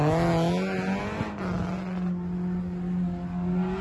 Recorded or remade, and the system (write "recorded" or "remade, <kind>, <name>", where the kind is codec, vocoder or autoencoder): recorded